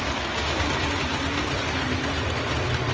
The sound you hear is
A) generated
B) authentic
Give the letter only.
B